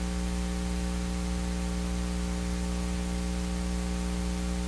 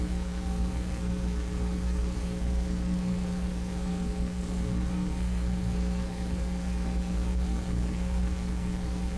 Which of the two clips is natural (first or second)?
first